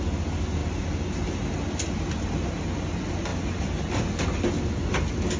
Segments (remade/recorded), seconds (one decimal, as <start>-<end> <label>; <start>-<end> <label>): 0.0-5.4 recorded